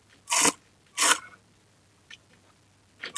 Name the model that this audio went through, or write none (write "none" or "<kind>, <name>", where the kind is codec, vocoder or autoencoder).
none